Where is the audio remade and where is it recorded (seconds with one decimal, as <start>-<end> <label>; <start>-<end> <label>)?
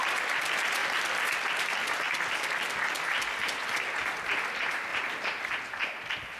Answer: 0.0-6.4 recorded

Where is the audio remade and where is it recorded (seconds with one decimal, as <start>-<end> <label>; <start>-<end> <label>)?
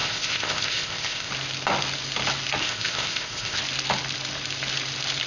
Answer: 0.0-1.3 remade; 1.3-2.6 recorded; 2.6-3.6 remade; 3.6-5.3 recorded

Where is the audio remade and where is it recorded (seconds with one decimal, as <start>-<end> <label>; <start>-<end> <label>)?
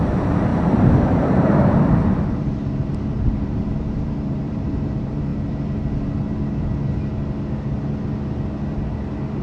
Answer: 0.0-5.3 remade; 5.3-9.4 recorded